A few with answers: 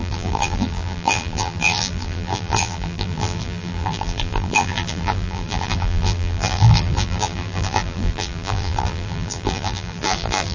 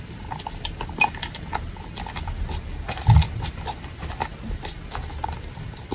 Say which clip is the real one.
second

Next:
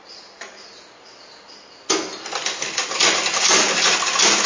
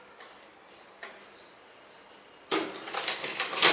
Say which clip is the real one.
first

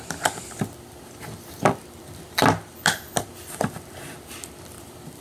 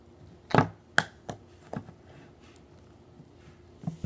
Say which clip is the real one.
second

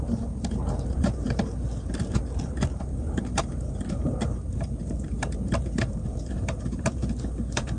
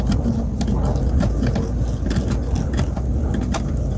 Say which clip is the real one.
second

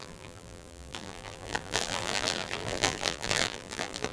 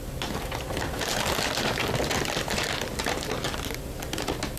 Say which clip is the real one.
second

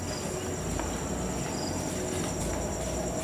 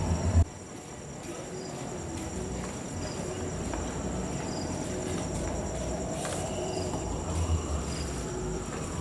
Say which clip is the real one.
first